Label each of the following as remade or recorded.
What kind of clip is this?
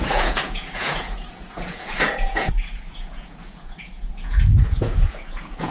remade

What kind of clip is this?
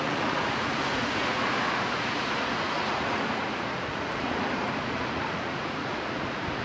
remade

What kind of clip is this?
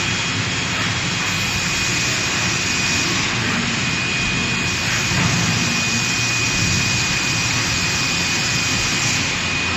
recorded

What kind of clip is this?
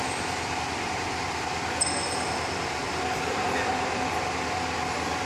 recorded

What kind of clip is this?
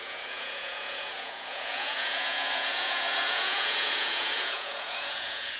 remade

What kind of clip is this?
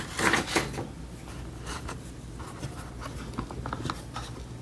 recorded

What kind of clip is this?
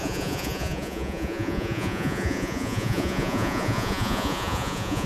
remade